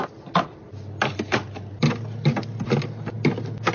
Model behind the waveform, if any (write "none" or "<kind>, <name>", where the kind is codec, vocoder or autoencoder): none